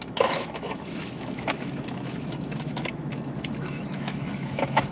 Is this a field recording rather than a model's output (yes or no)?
no